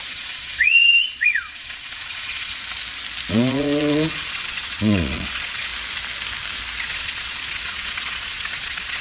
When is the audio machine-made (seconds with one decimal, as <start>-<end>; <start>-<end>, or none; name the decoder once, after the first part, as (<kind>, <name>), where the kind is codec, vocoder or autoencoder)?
0.0-2.5 (vocoder, Vocos); 3.3-5.7; 6.8-9.0